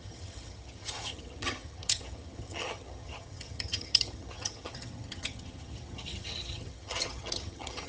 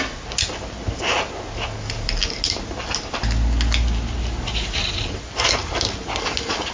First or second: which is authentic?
second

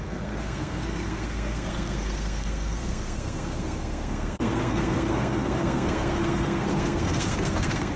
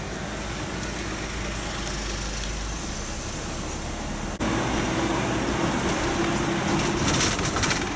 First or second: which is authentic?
second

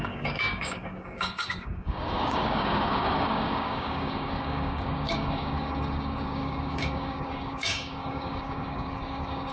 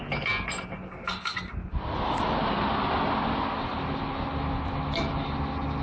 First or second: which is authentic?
second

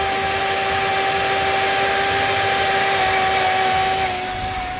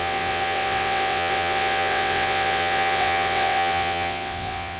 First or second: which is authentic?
first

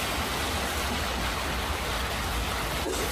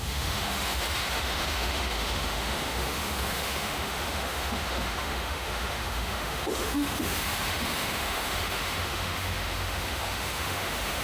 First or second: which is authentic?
first